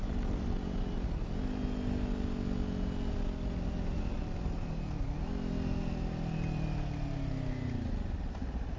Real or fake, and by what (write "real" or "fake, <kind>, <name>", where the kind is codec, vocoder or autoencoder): real